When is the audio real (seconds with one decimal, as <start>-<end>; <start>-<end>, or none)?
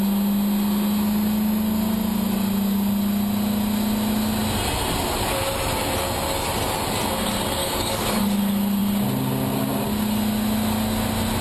0.0-7.6; 8.4-11.4